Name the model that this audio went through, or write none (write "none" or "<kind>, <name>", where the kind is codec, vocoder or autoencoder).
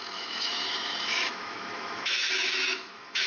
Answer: autoencoder, DAC-VAE